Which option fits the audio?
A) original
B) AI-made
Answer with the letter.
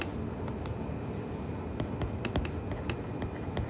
A